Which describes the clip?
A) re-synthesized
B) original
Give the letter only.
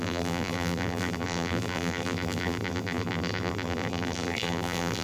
A